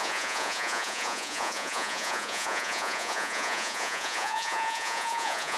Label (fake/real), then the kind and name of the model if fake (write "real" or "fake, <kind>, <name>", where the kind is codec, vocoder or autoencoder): fake, vocoder, Vocos